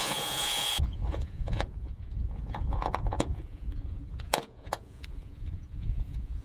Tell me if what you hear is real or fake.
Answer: fake